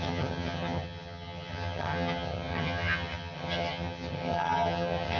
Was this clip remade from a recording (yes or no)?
yes